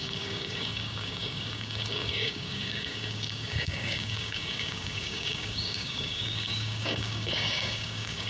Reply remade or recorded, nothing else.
remade